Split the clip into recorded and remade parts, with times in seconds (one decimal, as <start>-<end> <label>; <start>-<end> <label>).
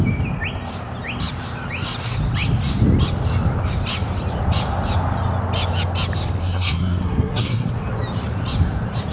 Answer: 0.0-6.4 recorded; 6.4-7.7 remade; 7.7-9.1 recorded